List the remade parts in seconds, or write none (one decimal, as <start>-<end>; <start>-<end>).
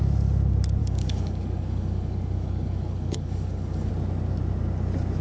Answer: 0.8-3.9